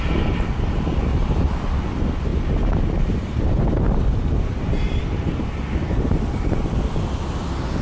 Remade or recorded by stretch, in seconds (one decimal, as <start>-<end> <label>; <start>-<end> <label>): 0.0-2.3 recorded; 2.3-5.0 remade; 5.0-7.8 recorded